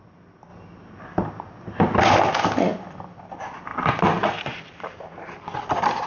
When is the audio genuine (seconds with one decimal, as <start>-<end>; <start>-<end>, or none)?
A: 0.0-3.7; 5.3-6.1